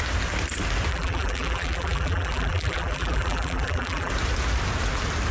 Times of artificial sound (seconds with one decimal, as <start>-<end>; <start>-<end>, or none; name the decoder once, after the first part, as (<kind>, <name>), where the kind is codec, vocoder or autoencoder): 0.9-4.1 (vocoder, BigVGAN v2)